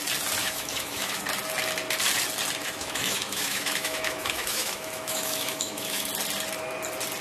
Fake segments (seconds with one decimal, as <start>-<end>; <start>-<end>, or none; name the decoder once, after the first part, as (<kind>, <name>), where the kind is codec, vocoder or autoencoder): 0.4-1.2 (autoencoder, DAC-VAE); 2.6-6.1